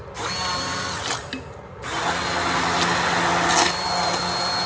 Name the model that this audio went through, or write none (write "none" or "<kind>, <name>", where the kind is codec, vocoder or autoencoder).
none